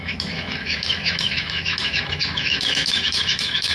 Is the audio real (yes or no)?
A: no